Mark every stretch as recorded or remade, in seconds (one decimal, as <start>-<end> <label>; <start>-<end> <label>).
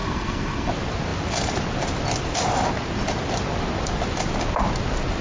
0.0-0.7 remade; 0.7-5.2 recorded